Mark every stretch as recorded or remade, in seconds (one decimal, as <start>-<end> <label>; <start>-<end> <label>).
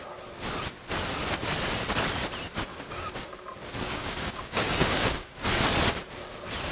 0.0-2.7 recorded; 2.7-3.3 remade; 3.3-3.9 recorded; 3.9-5.4 remade; 5.4-6.7 recorded